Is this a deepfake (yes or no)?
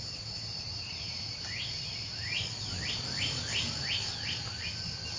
no